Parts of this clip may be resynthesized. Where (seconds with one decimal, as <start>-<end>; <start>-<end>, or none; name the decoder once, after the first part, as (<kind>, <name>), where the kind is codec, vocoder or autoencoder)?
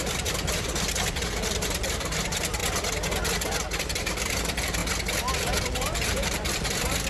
0.0-2.6 (vocoder, BigVGAN v2); 3.8-4.8; 5.4-7.1